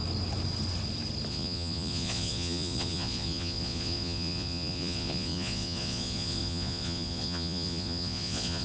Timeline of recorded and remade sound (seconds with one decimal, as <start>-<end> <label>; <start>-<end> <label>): 0.0-1.3 recorded; 1.3-8.6 remade